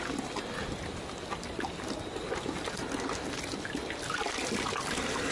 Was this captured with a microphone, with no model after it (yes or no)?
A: yes